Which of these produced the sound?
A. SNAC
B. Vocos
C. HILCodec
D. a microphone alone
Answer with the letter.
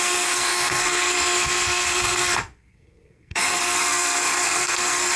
A